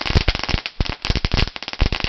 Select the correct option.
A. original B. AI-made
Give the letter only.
A